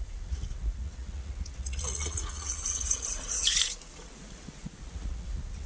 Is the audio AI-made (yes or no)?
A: yes